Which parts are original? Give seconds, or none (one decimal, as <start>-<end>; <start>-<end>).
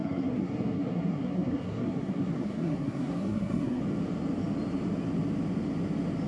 3.8-6.3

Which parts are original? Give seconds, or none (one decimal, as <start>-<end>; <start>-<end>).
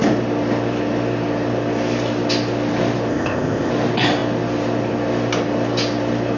0.0-3.1; 3.7-6.4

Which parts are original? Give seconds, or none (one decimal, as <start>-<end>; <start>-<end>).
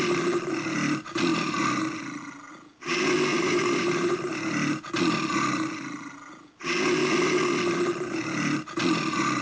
0.0-1.3; 1.8-3.3; 4.3-9.4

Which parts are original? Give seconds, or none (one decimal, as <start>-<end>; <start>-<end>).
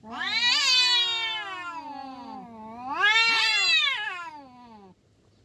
0.0-5.4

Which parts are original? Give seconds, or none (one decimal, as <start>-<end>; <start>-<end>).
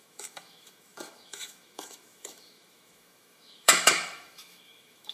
none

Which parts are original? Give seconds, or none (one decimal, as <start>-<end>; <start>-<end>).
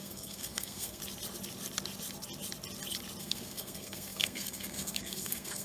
1.0-3.2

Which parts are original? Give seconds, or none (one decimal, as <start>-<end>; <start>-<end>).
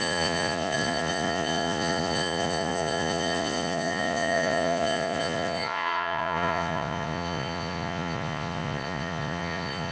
none